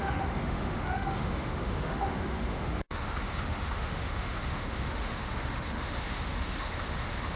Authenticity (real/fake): fake